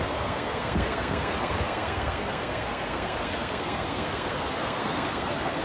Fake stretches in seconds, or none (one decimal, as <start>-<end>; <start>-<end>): 0.0-5.6